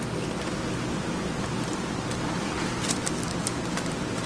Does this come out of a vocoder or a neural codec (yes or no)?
no